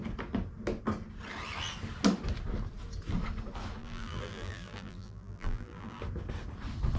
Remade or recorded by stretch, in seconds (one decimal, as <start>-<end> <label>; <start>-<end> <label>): 0.0-3.8 recorded; 3.8-6.0 remade; 6.0-7.0 recorded